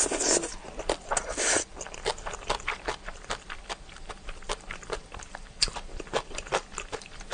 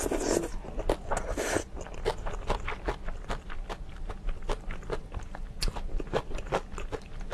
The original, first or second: second